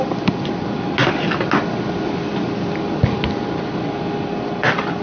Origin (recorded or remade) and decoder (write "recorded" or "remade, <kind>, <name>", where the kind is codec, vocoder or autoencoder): recorded